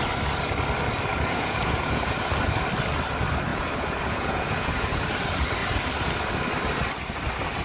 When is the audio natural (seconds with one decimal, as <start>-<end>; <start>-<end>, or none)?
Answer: 0.0-1.1; 2.3-3.5; 5.0-7.6